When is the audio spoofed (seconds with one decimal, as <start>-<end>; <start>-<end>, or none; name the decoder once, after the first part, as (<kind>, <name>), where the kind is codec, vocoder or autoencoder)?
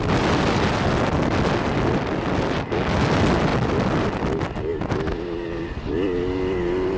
none